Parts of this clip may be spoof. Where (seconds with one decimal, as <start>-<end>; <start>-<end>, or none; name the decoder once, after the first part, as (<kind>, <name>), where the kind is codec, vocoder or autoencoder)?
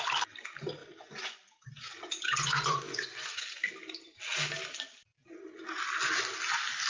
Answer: 0.8-3.4 (vocoder, Vocos)